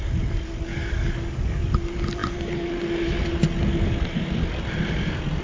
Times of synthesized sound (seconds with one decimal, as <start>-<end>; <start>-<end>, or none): 0.7-1.7